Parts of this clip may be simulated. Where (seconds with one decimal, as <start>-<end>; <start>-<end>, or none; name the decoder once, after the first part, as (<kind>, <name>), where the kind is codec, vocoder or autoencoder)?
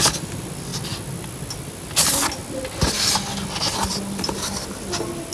none